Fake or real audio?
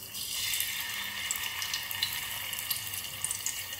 real